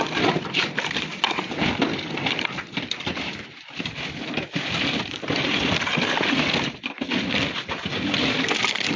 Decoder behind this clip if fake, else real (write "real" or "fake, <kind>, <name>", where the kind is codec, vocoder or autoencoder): real